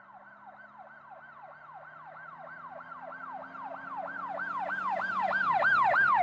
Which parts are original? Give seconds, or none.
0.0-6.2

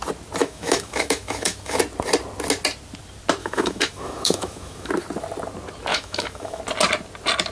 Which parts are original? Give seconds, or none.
0.0-0.4; 1.8-3.4; 4.9-5.9; 6.6-7.5

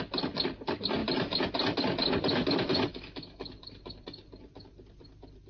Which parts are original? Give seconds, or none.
0.0-2.9; 3.5-5.5